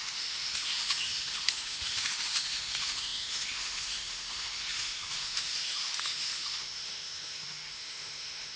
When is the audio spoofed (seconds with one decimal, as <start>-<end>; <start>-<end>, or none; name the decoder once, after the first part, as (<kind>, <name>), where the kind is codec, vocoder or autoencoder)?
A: 0.0-8.6 (autoencoder, DAC-VAE)